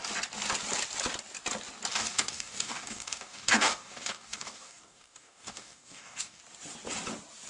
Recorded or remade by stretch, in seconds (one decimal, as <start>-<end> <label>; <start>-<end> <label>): 0.0-1.9 recorded; 1.9-6.4 remade; 6.4-7.5 recorded